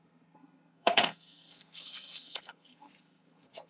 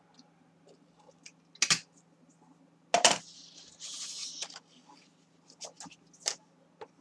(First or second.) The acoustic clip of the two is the second